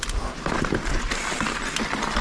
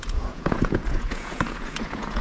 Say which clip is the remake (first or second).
second